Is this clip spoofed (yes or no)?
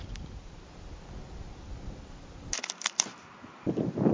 no